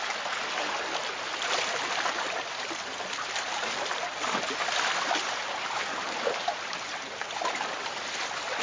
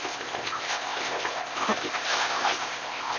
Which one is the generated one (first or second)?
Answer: second